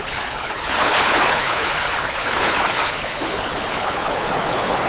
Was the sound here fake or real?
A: fake